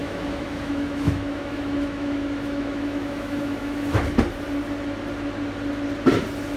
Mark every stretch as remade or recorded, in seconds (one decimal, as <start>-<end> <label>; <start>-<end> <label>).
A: 0.0-4.0 remade; 4.0-6.6 recorded